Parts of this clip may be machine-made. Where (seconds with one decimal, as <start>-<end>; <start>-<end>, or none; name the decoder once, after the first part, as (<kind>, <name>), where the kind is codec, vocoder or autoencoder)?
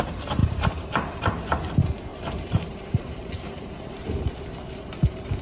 0.4-1.7 (vocoder, BigVGAN v2); 2.1-5.4